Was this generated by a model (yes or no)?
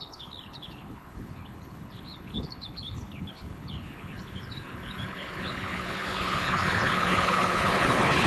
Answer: yes